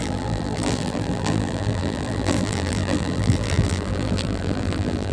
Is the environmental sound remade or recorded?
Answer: remade